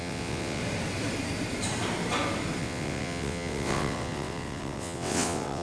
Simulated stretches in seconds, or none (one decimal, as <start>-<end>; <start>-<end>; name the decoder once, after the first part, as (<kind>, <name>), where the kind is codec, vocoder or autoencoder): 0.0-0.6 (vocoder, WaveNeXt); 2.6-5.6